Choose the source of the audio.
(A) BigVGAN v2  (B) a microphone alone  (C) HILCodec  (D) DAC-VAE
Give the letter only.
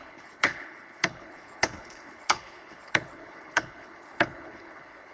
C